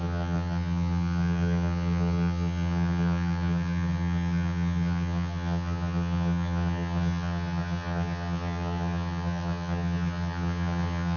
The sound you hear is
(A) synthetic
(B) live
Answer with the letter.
A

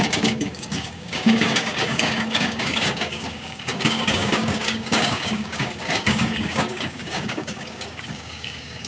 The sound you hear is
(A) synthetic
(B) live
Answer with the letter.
A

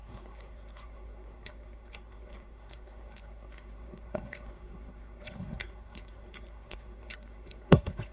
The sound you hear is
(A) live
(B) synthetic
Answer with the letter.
B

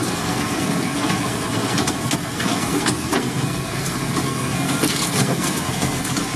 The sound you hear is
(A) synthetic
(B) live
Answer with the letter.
A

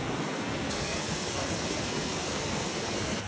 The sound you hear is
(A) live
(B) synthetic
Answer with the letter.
B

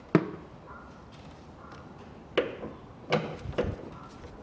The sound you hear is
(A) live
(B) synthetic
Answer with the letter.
A